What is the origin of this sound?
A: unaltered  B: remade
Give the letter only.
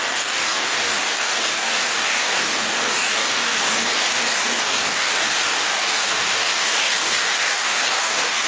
B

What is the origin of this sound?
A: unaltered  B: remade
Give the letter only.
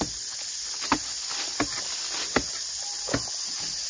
A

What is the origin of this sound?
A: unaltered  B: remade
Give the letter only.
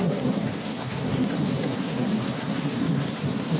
B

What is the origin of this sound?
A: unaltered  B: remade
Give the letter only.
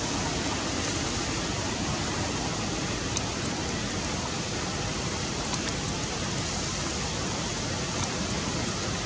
A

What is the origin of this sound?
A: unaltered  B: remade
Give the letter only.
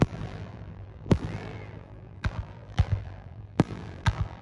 B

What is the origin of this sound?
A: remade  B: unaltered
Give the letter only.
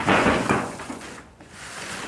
A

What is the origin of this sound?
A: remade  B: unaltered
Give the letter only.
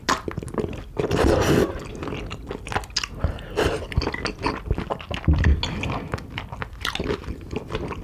B